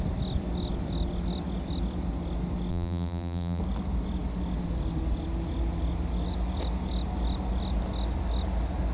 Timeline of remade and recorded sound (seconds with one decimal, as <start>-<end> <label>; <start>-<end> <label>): 0.0-2.7 recorded; 2.7-3.6 remade; 3.6-8.9 recorded

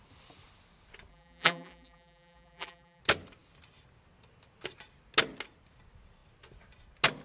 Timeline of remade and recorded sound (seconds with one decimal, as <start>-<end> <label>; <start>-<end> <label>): 0.0-1.1 recorded; 1.1-3.0 remade; 3.0-7.2 recorded

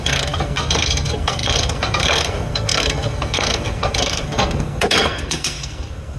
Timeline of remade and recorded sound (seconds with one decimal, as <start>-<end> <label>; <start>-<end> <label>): 0.0-6.2 remade

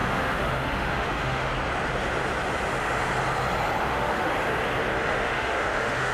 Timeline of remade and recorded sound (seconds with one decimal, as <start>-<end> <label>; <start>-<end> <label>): 0.0-1.5 remade; 1.5-3.8 recorded; 3.8-4.3 remade; 4.3-5.1 recorded; 5.1-6.1 remade